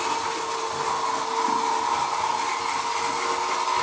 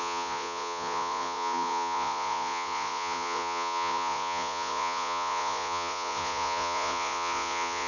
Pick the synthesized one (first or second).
second